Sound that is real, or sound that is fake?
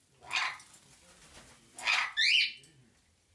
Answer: real